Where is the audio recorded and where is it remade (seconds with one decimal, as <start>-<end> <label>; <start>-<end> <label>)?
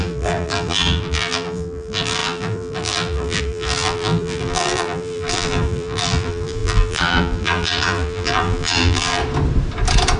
0.0-9.2 remade; 9.2-10.2 recorded